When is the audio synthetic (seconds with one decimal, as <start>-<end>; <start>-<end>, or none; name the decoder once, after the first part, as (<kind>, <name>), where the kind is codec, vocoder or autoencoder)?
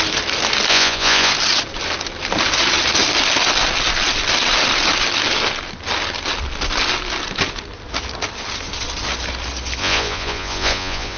0.7-1.3 (vocoder, Vocos); 9.8-11.2